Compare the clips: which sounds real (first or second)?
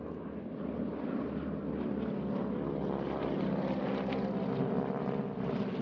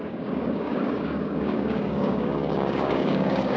first